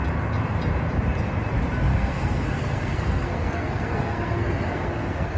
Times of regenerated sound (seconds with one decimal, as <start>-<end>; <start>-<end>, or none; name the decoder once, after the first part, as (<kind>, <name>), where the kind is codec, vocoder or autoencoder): 1.9-5.4 (codec, SNAC)